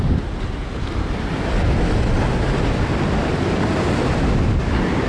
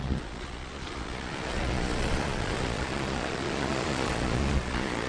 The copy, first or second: second